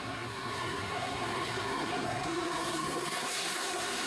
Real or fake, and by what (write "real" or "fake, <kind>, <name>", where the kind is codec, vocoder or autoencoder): fake, codec, SNAC